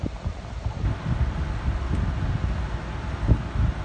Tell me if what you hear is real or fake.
real